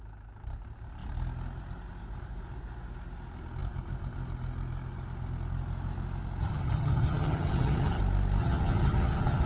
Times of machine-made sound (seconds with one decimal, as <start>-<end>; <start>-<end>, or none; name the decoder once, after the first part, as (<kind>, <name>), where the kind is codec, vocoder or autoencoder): 6.4-8.0 (vocoder, HiFi-GAN); 8.4-9.5